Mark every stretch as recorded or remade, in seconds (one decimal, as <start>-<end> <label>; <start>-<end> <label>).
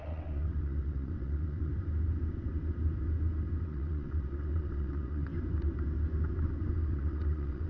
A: 0.0-1.7 remade; 1.7-3.6 recorded; 3.6-5.3 remade; 5.3-6.9 recorded; 6.9-7.7 remade